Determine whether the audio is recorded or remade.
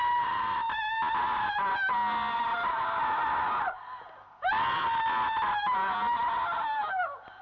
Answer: recorded